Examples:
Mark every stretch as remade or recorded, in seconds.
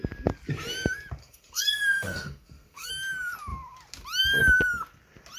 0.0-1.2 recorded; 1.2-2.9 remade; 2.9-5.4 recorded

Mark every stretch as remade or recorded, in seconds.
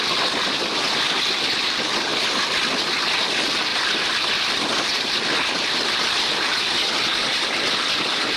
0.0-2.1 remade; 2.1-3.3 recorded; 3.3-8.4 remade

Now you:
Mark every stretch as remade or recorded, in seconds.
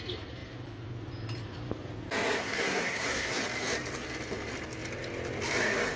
0.0-2.4 recorded; 2.4-3.4 remade; 3.4-6.0 recorded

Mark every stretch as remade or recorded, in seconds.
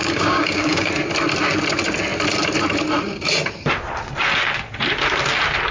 0.0-0.9 remade; 0.9-5.7 recorded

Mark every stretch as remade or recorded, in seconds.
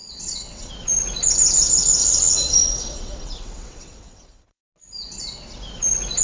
0.0-0.7 remade; 0.7-2.0 recorded; 2.0-4.6 remade; 4.6-6.2 recorded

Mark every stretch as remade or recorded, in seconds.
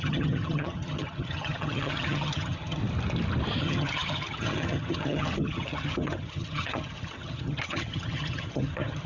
0.0-2.8 remade; 2.8-3.6 recorded; 3.6-9.1 remade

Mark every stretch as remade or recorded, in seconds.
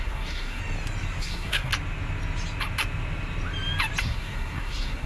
0.0-0.6 remade; 0.6-1.2 recorded; 1.2-1.7 remade; 1.7-4.0 recorded; 4.0-5.1 remade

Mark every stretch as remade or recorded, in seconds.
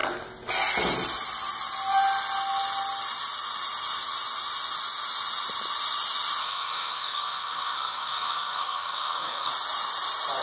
0.0-6.4 recorded; 6.4-9.5 remade; 9.5-10.4 recorded